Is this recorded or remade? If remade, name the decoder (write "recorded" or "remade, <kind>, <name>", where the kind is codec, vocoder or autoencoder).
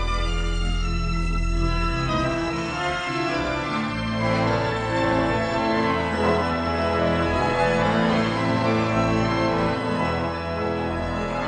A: remade, codec, SNAC